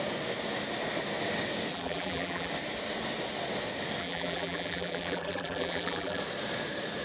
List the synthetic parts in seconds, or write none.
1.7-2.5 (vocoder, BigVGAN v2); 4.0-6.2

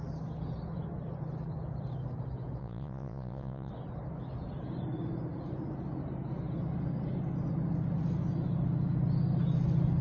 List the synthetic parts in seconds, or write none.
2.6-3.7 (vocoder, Vocos)

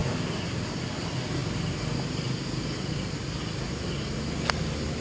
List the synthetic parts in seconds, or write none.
none

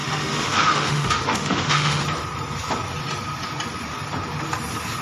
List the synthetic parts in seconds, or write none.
0.0-2.0 (autoencoder, DAC-VAE)

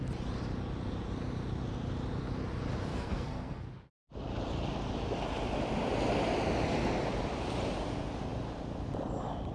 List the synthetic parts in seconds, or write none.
2.9-3.6 (codec, SNAC)